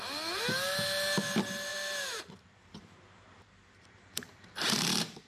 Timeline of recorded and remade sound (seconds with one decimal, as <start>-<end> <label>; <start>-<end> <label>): 0.0-1.7 recorded; 1.7-5.3 remade

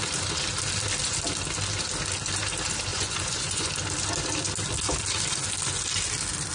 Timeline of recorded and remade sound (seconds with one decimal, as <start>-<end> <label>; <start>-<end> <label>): 0.0-2.9 recorded; 2.9-3.7 remade; 3.7-6.5 recorded